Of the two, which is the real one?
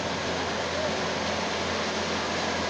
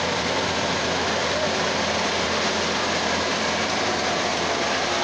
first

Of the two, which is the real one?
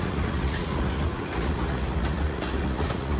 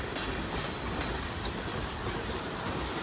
second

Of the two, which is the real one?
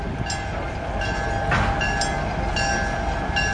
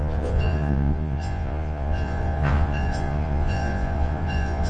first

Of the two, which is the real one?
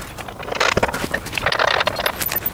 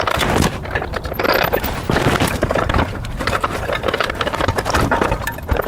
first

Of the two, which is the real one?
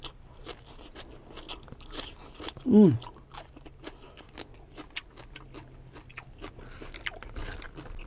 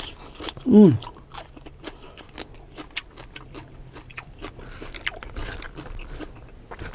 first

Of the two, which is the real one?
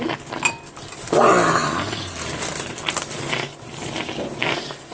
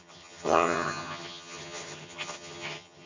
first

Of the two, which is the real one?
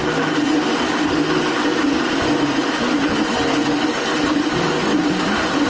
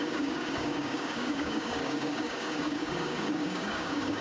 first